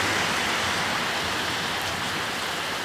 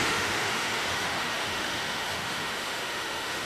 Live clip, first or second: first